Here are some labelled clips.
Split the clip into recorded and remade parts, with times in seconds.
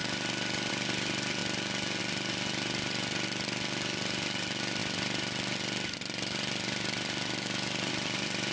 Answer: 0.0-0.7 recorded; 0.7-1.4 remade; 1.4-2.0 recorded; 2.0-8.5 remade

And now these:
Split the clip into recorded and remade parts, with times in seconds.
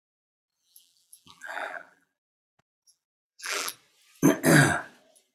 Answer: 0.0-0.5 recorded; 0.5-3.7 remade; 3.7-5.3 recorded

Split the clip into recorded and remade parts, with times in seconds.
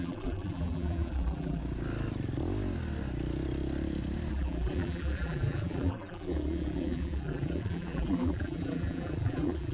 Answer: 0.0-1.6 remade; 1.6-4.3 recorded; 4.3-9.7 remade